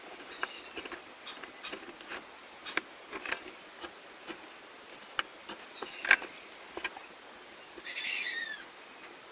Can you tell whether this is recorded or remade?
recorded